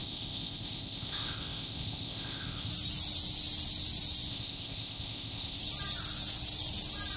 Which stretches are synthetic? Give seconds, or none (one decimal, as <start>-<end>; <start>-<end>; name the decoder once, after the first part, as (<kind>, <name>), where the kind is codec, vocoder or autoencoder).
0.0-2.7 (codec, ZipCodec); 4.3-5.6